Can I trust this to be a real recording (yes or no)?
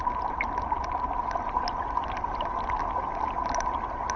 yes